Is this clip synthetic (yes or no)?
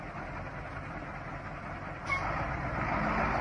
no